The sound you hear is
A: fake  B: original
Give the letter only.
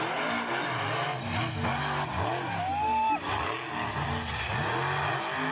B